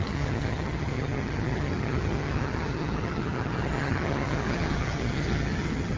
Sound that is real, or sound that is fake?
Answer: fake